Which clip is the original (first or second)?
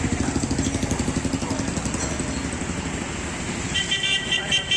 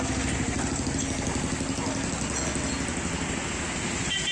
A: second